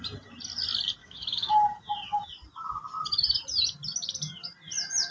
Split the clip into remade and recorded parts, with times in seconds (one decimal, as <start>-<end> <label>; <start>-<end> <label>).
0.0-1.0 recorded; 1.0-1.5 remade; 1.5-5.1 recorded